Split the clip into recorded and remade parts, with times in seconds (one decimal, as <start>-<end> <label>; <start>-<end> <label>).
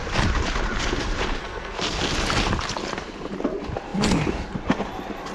0.0-1.4 recorded; 1.4-2.0 remade; 2.0-5.3 recorded